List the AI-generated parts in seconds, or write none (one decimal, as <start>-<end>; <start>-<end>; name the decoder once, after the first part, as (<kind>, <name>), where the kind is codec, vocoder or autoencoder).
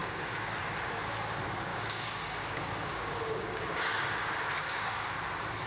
0.0-0.6 (codec, DAC); 1.7-5.1